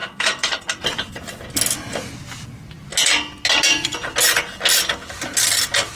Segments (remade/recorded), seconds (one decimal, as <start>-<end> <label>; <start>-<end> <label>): 0.0-0.6 remade; 0.6-6.0 recorded